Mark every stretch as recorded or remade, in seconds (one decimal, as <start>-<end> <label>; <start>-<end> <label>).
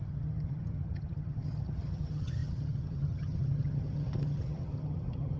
0.0-5.4 remade